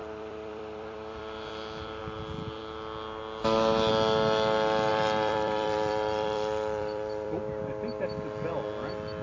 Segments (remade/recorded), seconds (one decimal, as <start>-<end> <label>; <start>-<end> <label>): 0.0-2.0 remade; 2.0-4.9 recorded; 4.9-7.6 remade; 7.6-9.2 recorded